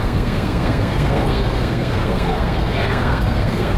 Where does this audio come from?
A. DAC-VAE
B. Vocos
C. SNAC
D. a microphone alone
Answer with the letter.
C